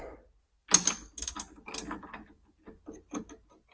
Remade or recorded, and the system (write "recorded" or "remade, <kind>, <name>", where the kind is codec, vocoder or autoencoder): recorded